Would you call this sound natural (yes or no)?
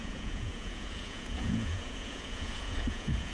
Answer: no